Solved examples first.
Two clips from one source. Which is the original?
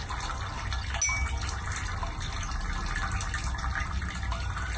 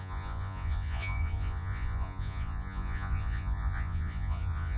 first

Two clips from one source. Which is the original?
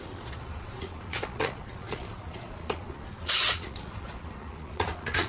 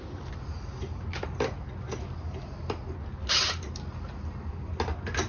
second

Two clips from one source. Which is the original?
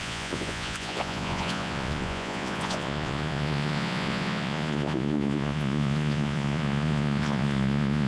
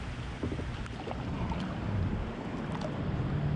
second